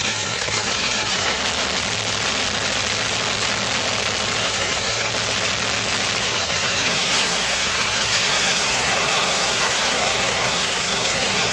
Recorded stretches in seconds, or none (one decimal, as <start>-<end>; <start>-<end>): 1.4-4.4; 5.1-6.2